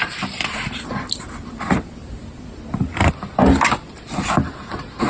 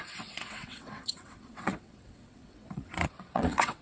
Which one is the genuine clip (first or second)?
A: first